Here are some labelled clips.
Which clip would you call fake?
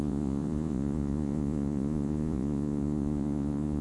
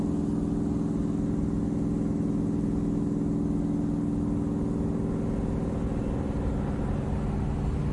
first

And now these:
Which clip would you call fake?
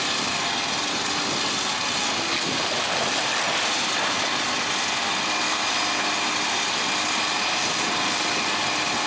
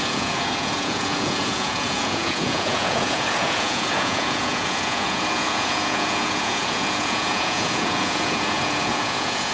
second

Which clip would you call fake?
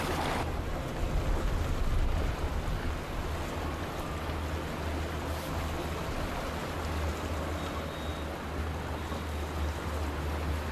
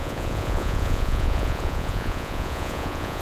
second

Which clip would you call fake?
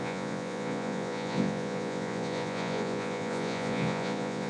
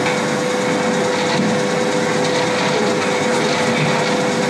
first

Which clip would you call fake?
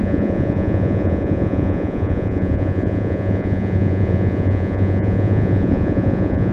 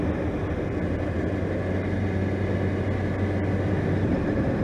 first